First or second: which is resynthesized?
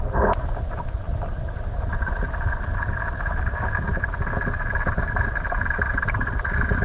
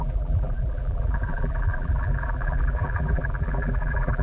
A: second